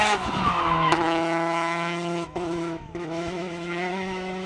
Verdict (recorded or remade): remade